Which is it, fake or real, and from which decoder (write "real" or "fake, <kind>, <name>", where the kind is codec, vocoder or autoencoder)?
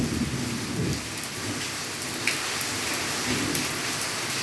real